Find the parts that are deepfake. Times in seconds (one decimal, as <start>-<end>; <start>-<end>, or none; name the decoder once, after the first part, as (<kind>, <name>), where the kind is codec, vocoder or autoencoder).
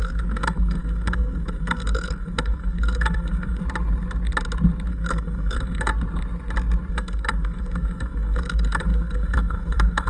0.0-3.6 (codec, SNAC); 4.9-5.9; 6.9-10.1